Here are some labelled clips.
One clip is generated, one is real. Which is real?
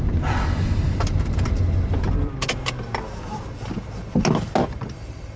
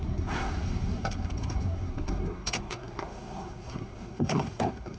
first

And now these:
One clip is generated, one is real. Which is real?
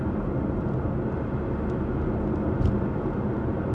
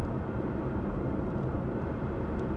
first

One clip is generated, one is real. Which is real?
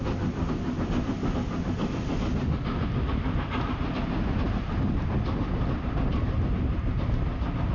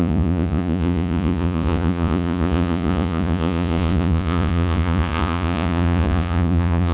first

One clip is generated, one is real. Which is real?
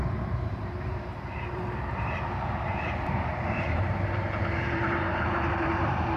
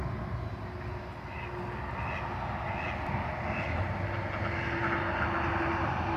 second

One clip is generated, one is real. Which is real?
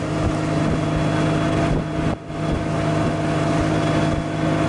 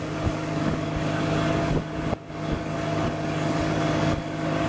first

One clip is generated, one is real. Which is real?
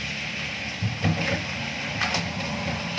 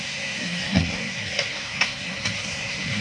first